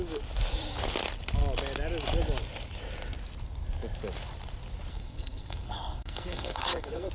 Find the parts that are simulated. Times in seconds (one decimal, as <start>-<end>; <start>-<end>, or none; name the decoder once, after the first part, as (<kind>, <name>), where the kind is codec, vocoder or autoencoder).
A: 4.9-7.1 (codec, SNAC)